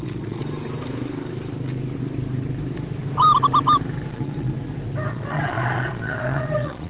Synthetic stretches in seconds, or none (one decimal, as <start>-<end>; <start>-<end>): 0.0-0.4; 4.1-4.5; 5.1-6.9